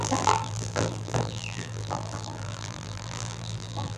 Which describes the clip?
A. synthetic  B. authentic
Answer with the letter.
A